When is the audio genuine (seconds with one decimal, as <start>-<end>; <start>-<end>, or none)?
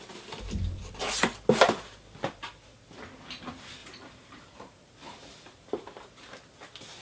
0.0-3.8; 6.1-7.0